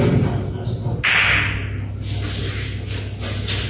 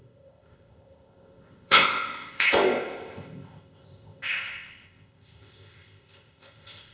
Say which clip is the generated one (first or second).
second